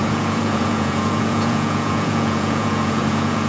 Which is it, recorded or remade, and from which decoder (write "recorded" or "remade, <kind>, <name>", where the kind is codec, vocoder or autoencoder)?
remade, vocoder, Vocos